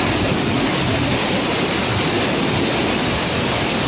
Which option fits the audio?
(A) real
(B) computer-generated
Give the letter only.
A